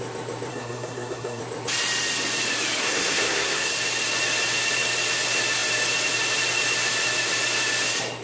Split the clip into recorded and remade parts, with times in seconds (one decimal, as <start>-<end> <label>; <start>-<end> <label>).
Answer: 0.0-0.5 recorded; 0.5-1.4 remade; 1.4-2.8 recorded; 2.8-3.7 remade; 3.7-8.2 recorded